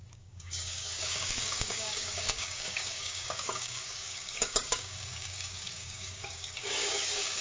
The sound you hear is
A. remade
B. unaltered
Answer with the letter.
A